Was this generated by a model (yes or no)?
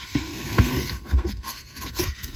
yes